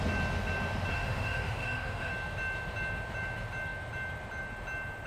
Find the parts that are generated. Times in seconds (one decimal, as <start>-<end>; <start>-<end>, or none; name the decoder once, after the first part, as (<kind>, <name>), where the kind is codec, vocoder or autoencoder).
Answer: 0.9-2.1 (autoencoder, DAC-VAE)